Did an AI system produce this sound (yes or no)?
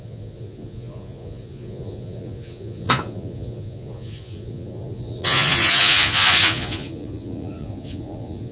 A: yes